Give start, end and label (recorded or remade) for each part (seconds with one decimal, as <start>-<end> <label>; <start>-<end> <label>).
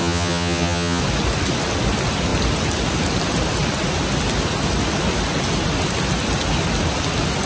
0.0-1.0 remade; 1.0-7.5 recorded